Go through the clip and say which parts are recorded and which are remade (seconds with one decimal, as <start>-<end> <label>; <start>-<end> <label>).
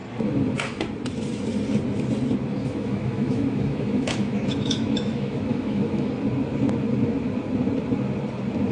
0.0-2.6 recorded; 2.6-6.1 remade; 6.1-8.7 recorded